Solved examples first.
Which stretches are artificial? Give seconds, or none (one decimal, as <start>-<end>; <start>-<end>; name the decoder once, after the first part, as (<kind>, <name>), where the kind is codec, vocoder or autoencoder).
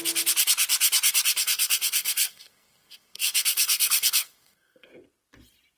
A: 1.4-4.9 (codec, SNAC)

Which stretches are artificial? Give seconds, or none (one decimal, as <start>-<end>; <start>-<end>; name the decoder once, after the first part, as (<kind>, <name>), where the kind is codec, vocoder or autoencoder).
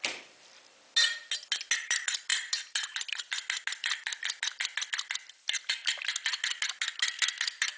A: none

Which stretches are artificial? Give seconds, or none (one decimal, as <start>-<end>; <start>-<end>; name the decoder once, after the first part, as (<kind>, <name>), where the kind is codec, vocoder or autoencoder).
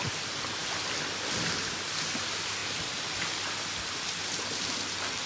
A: 0.6-1.1 (vocoder, BigVGAN v2)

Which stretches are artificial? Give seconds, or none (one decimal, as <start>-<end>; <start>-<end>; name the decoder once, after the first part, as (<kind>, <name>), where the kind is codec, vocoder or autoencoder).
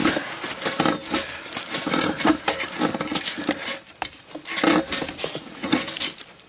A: 5.2-5.8 (vocoder, Vocos)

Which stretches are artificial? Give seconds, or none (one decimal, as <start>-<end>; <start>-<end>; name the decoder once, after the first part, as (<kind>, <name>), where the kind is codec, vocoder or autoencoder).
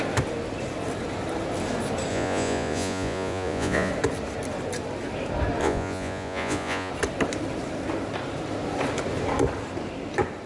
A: 2.1-3.9 (vocoder, Vocos); 5.6-6.9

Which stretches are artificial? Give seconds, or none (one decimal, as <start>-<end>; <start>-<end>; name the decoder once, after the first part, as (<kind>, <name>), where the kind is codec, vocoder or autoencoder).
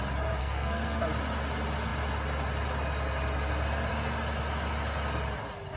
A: 0.4-1.0 (codec, SNAC)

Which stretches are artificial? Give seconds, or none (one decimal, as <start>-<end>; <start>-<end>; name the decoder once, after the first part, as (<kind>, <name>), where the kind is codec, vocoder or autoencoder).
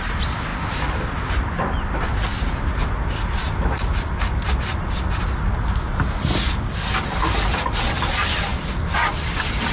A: none